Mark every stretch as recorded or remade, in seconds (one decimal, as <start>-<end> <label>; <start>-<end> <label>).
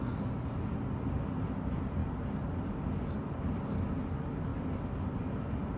0.0-5.8 recorded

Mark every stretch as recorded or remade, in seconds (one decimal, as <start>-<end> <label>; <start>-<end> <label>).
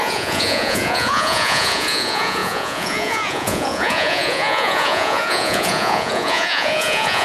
0.0-7.2 remade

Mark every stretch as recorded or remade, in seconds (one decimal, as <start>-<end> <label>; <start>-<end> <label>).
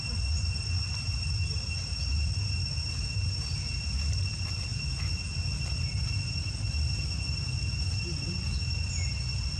0.0-9.6 recorded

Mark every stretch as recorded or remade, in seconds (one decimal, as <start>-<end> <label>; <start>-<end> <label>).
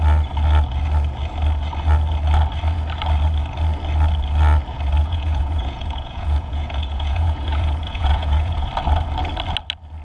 0.0-5.0 recorded; 5.0-8.7 remade; 8.7-10.0 recorded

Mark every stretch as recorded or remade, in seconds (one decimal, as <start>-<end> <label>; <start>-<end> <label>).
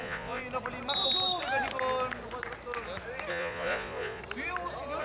0.0-0.4 remade; 0.4-3.3 recorded; 3.3-4.2 remade; 4.2-5.0 recorded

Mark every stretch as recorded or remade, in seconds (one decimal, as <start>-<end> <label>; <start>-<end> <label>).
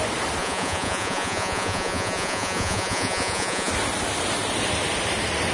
0.0-0.4 recorded; 0.4-3.7 remade; 3.7-5.5 recorded